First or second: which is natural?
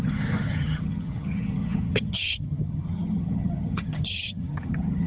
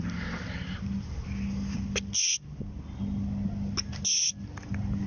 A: second